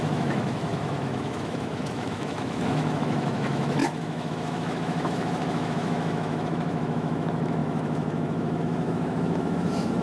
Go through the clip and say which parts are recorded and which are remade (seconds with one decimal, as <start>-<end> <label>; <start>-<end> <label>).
0.0-10.0 remade